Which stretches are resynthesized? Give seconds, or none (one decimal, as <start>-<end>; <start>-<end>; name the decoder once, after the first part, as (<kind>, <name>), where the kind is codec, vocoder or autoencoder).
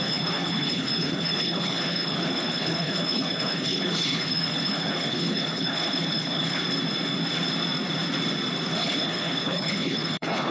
0.0-6.6 (codec, HILCodec); 8.8-10.5